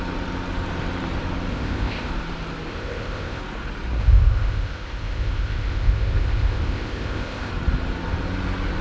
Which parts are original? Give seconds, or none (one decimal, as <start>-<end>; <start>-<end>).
0.0-1.5; 2.1-2.7; 3.4-4.0; 7.5-8.8